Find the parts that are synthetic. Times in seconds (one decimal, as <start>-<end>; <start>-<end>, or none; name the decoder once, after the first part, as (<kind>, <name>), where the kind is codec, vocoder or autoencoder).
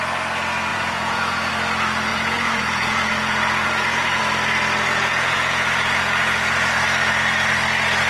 0.7-1.5 (vocoder, Vocos); 2.1-4.2; 4.9-6.7